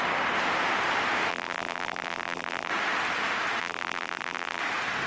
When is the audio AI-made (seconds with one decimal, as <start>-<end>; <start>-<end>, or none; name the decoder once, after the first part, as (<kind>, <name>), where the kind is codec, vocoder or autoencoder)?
1.3-2.7 (vocoder, BigVGAN v2); 3.6-4.6